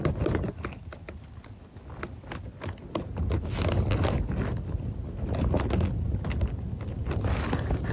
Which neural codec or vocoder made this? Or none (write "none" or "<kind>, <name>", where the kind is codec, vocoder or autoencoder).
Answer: none